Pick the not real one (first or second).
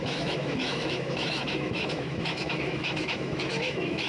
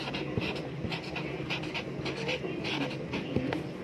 first